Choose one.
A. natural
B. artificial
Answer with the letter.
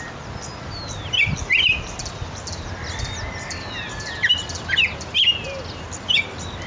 A